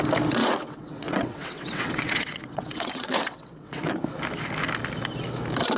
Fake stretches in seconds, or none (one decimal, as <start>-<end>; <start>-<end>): 0.4-3.9